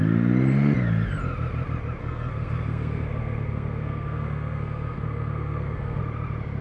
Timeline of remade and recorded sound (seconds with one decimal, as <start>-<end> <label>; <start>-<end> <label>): 0.0-2.0 recorded; 2.0-6.0 remade; 6.0-6.6 recorded